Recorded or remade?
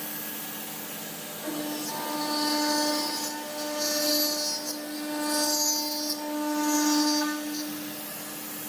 recorded